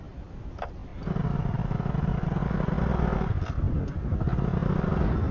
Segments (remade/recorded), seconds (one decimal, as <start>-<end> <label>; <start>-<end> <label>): 0.0-5.3 recorded